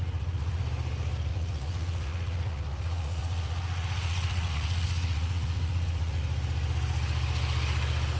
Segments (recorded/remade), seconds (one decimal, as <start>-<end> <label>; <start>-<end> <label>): 0.0-0.6 remade; 0.6-1.3 recorded; 1.3-6.2 remade; 6.2-8.2 recorded